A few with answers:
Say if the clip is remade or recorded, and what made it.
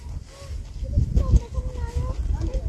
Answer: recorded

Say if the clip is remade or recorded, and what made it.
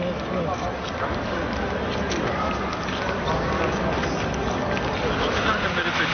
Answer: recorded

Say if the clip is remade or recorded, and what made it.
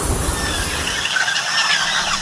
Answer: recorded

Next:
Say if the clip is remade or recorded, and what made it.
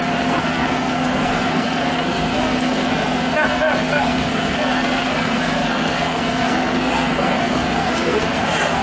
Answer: remade, codec, SNAC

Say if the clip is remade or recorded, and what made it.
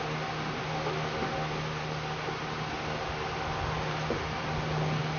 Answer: recorded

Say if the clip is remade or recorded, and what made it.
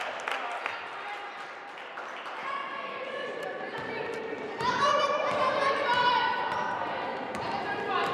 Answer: remade, vocoder, BigVGAN v2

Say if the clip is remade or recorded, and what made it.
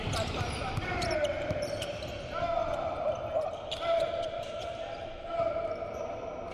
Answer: remade, vocoder, BigVGAN v2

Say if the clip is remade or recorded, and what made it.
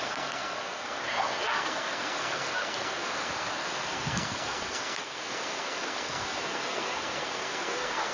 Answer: remade, codec, SNAC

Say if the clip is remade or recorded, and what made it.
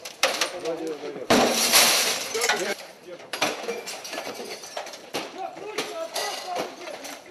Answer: remade, vocoder, BigVGAN v2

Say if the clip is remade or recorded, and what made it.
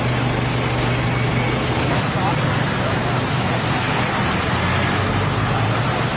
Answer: recorded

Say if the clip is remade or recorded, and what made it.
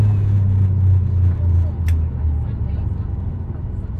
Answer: recorded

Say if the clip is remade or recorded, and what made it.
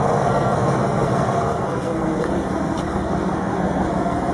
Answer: remade, codec, SNAC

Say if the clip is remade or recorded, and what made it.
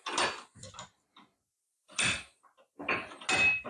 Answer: recorded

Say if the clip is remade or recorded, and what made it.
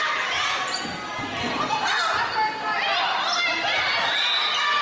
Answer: recorded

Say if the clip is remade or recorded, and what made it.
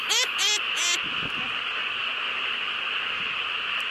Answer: recorded